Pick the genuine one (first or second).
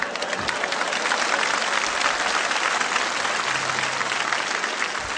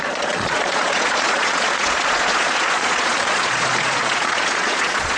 first